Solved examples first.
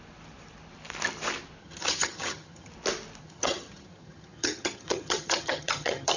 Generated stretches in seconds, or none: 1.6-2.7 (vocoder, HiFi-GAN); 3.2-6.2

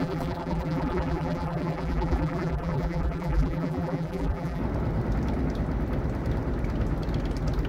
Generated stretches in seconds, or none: 0.0-4.6 (vocoder, BigVGAN v2)

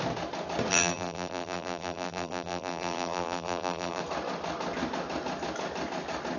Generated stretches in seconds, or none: 0.7-4.0 (vocoder, BigVGAN v2)

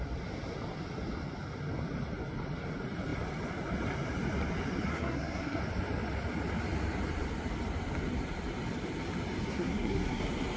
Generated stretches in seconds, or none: 4.9-5.6 (codec, SNAC); 9.5-10.2

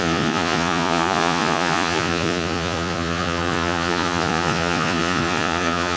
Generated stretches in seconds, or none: 0.0-6.0 (vocoder, Vocos)